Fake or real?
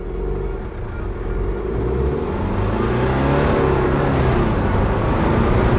real